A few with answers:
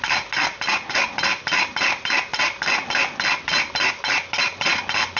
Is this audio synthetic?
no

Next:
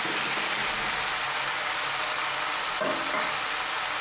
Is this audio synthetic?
no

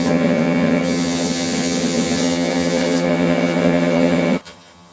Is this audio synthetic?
yes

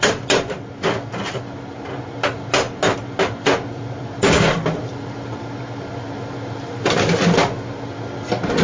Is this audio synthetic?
no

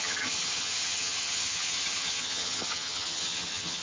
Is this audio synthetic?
yes